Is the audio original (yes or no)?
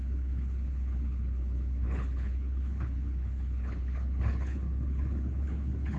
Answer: no